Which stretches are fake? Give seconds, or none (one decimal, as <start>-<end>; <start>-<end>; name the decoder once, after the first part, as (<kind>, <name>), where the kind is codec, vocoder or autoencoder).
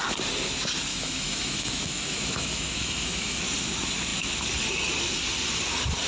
0.9-3.4 (autoencoder, DAC-VAE)